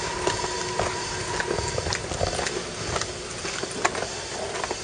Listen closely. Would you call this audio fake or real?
real